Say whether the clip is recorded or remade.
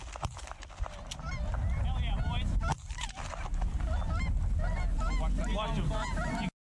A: recorded